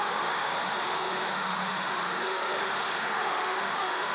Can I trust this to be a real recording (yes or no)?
no